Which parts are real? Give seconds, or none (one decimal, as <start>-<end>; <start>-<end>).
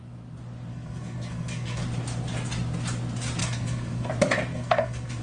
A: 0.0-0.7; 1.8-3.4; 4.1-4.5